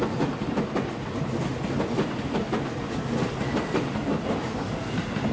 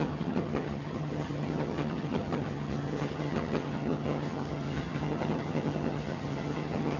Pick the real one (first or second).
first